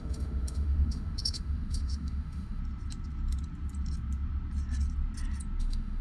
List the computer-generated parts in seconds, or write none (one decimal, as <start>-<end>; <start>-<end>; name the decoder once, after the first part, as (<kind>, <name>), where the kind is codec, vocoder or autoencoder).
0.0-2.6 (autoencoder, DAC-VAE); 5.6-6.0